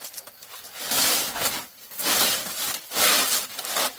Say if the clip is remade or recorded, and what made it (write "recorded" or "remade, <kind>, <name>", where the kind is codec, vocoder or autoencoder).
recorded